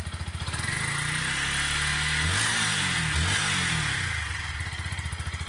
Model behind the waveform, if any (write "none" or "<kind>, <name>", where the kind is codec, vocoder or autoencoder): none